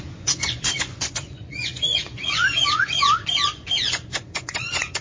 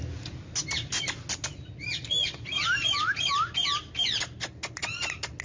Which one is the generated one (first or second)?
first